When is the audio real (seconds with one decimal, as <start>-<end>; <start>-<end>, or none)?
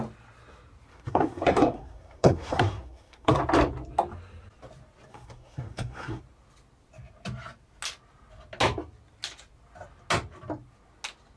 0.0-0.9; 3.4-5.1; 6.2-11.4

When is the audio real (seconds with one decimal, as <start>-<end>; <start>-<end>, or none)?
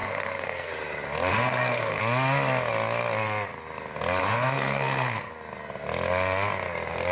0.7-1.3; 2.0-4.2; 5.3-7.1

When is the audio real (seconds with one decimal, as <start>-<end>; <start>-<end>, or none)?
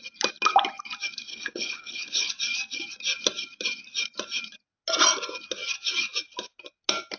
0.0-1.3; 2.3-7.2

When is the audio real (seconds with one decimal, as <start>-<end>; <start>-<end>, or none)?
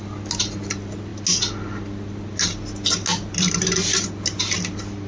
0.0-5.1